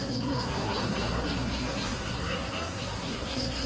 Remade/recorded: remade